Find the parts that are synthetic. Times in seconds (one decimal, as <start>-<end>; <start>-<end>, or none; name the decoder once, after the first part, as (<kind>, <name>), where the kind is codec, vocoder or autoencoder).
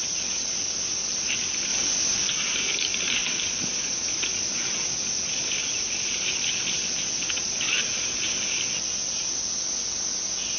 none